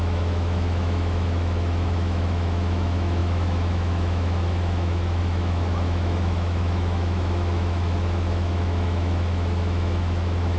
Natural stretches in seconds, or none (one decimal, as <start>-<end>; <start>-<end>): none